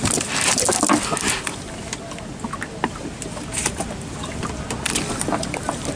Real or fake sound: real